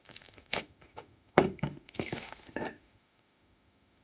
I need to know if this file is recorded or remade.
remade